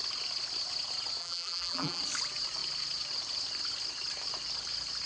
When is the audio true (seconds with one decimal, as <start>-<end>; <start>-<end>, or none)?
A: 0.0-1.2; 2.0-5.1

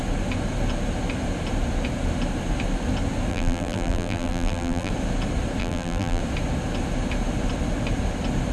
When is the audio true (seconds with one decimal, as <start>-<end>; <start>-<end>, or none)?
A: 0.0-3.3; 4.9-5.6; 6.2-8.5

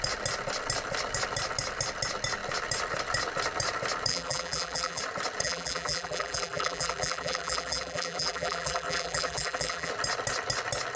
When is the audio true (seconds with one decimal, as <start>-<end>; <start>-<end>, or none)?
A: 0.0-4.1; 5.0-5.4; 9.9-11.0

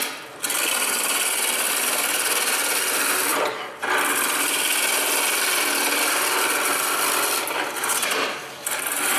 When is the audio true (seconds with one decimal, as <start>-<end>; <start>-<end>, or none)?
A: 0.0-9.2

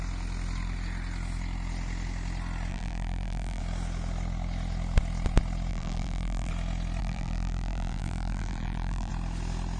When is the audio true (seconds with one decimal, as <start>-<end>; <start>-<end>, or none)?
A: 0.0-2.7; 3.6-5.7; 6.5-7.0; 9.1-9.8

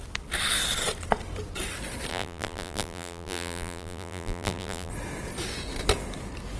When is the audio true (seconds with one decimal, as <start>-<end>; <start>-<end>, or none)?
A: 0.0-2.1; 4.9-6.6

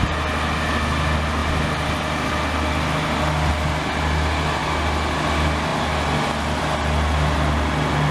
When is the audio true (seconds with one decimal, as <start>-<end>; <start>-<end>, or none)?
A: 0.0-8.1